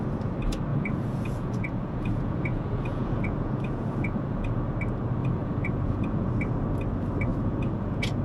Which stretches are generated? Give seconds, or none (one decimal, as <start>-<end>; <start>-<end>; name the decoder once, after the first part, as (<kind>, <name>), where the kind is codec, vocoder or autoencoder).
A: 0.7-4.6 (vocoder, Vocos); 5.2-6.3; 7.3-8.2